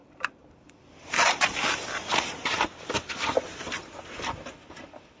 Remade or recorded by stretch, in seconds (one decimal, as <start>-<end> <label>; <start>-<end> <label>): 0.0-5.2 remade